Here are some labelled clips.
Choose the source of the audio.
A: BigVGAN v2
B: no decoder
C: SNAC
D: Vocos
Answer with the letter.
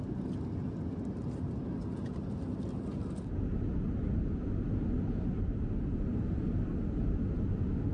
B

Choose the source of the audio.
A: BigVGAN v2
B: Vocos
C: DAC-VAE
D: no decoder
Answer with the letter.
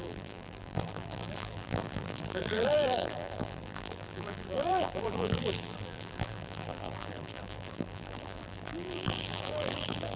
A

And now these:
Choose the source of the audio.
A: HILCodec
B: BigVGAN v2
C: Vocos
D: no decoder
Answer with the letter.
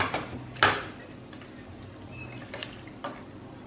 D